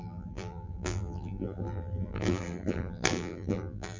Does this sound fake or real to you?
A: fake